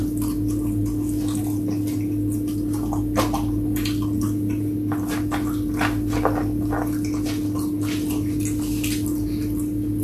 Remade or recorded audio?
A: recorded